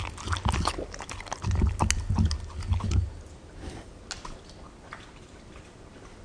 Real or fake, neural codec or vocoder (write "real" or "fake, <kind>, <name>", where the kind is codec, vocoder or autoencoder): real